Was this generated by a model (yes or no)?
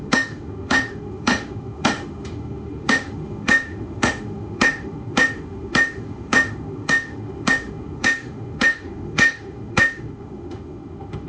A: yes